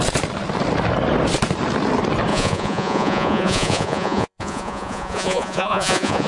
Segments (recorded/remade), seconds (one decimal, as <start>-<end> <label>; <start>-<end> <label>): 0.0-2.3 recorded; 2.3-6.3 remade